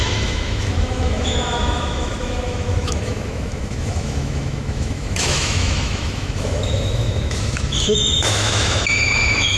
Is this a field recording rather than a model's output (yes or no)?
no